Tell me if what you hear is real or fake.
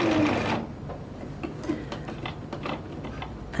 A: real